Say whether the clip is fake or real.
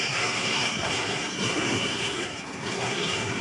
fake